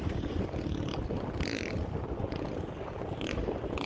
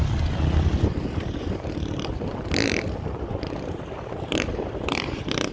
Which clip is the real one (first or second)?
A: first